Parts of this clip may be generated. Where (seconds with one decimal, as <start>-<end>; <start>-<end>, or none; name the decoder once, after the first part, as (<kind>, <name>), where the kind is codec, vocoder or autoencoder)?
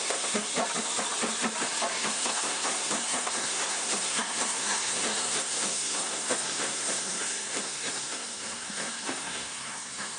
0.0-0.5 (codec, SNAC); 1.9-10.2